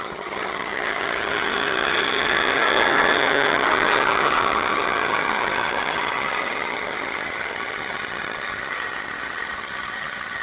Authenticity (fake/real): fake